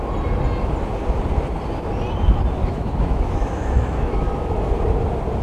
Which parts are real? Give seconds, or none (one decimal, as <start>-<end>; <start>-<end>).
0.0-2.6; 4.7-5.4